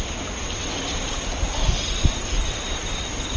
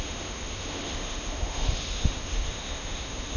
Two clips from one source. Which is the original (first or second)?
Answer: first